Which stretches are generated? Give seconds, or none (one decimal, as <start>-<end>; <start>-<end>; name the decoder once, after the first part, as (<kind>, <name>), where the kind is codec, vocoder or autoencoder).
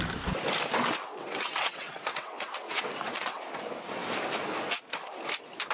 1.1-3.4 (vocoder, WaveNeXt)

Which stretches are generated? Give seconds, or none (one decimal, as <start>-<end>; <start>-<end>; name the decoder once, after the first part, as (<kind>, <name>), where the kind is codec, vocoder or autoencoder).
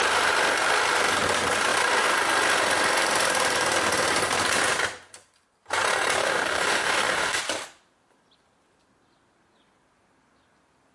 6.2-7.4 (autoencoder, DAC-VAE)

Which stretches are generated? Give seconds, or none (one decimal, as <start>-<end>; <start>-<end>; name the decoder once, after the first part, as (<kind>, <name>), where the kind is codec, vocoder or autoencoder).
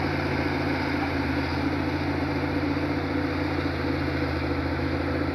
none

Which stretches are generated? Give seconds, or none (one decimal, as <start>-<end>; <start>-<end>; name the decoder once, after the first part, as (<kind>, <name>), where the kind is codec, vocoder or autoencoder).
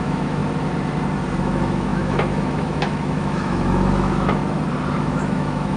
0.0-0.4 (autoencoder, DAC-VAE); 1.4-4.4; 5.0-5.8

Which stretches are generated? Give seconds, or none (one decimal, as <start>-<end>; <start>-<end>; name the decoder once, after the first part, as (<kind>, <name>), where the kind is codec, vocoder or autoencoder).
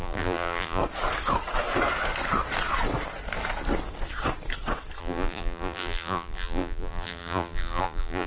0.0-0.8 (vocoder, BigVGAN v2); 5.0-8.3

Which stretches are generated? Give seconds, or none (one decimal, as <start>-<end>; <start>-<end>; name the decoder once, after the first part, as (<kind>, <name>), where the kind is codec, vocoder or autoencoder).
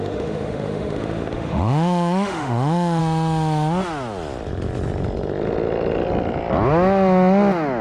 0.0-3.0 (autoencoder, DAC-VAE)